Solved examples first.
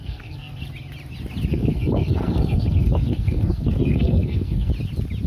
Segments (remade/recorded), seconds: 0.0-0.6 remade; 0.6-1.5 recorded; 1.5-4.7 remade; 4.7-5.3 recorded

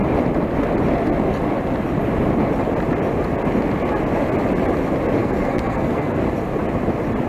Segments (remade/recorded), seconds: 0.0-5.2 recorded; 5.2-6.2 remade; 6.2-7.3 recorded

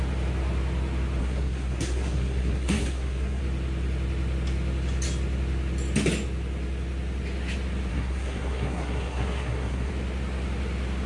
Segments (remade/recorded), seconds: 0.0-1.2 recorded; 1.2-3.4 remade; 3.4-7.9 recorded; 7.9-9.9 remade; 9.9-11.1 recorded

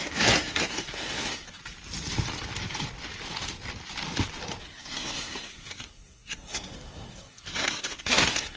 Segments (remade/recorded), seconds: 0.0-1.6 remade; 1.6-4.6 recorded; 4.6-8.6 remade

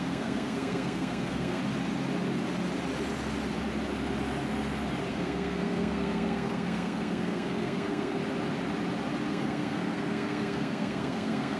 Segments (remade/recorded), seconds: 0.0-1.6 remade; 1.6-5.1 recorded; 5.1-8.2 remade; 8.2-9.3 recorded; 9.3-11.6 remade

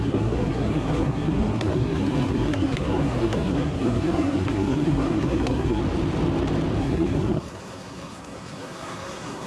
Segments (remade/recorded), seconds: 0.0-5.8 remade; 5.8-6.8 recorded; 6.8-9.5 remade

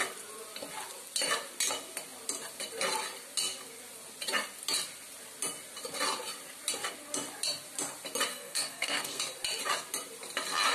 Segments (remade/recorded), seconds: 0.0-8.3 recorded; 8.3-9.2 remade; 9.2-10.7 recorded